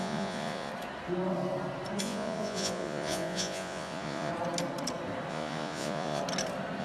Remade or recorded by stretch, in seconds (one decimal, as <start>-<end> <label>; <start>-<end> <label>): 0.0-0.7 remade; 0.7-2.0 recorded; 2.0-4.3 remade; 4.3-5.3 recorded; 5.3-6.2 remade; 6.2-6.8 recorded